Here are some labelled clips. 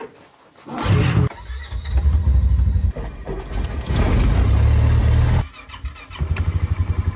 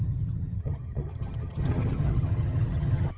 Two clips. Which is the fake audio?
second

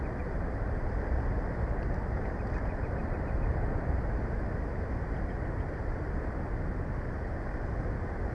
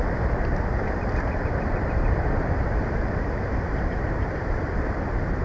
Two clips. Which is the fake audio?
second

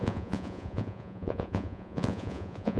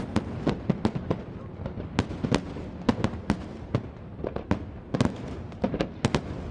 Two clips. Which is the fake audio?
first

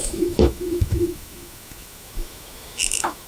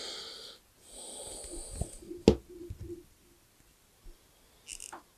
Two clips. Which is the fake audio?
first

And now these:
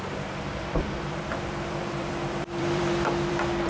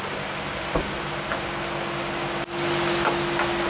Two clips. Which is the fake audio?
first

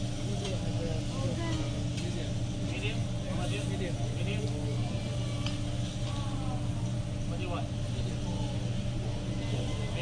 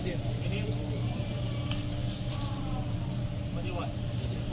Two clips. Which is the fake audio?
second